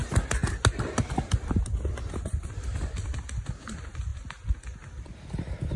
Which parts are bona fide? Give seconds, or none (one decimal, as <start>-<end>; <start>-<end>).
0.0-5.8